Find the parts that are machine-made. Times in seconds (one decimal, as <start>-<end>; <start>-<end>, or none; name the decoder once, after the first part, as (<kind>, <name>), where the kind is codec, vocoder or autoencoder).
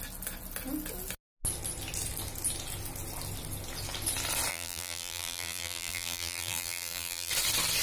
4.5-7.3 (vocoder, BigVGAN v2)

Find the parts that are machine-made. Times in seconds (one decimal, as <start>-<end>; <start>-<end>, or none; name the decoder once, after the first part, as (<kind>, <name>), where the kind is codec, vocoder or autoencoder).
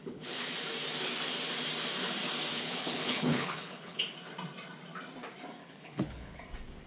0.0-0.5 (codec, HILCodec); 2.5-4.0; 5.6-6.4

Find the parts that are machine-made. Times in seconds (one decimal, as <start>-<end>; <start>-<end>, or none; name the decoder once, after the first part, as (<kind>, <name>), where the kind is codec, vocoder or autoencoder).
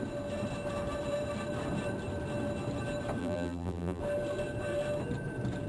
3.2-4.0 (vocoder, BigVGAN v2)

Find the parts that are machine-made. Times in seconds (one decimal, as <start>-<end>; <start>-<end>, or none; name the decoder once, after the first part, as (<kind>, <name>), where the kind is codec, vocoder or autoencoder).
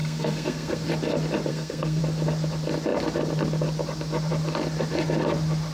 0.0-0.9 (codec, SNAC); 1.5-2.0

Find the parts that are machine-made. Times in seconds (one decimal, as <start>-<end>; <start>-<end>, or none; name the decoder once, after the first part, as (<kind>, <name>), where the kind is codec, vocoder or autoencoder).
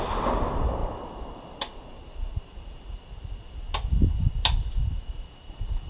none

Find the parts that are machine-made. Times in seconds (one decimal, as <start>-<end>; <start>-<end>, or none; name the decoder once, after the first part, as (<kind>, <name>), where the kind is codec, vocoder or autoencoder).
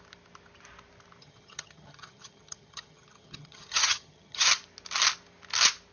1.2-4.5 (vocoder, HiFi-GAN)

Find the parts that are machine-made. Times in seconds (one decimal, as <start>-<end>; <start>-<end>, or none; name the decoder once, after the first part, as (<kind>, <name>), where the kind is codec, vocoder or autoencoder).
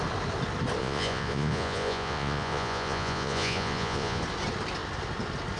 0.8-4.2 (vocoder, Vocos)